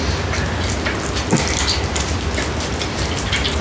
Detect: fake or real real